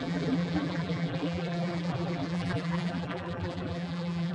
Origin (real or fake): fake